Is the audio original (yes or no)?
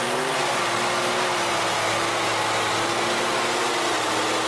yes